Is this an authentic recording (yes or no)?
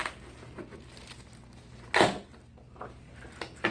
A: no